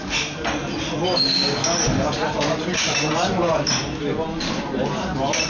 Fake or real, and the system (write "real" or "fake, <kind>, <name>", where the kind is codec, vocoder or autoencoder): real